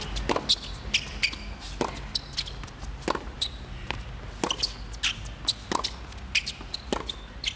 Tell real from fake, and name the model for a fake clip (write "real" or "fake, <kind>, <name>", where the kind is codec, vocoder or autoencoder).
real